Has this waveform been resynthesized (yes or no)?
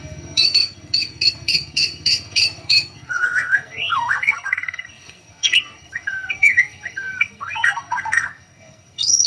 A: yes